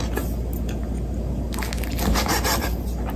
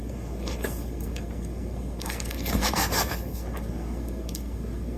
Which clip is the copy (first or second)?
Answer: second